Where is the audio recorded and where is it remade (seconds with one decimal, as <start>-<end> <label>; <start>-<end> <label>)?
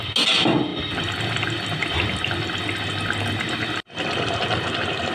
0.0-5.1 recorded